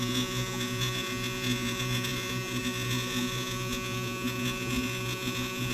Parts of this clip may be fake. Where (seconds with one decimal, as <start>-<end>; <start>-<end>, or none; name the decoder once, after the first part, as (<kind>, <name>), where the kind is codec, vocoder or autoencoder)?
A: 0.0-5.7 (vocoder, Vocos)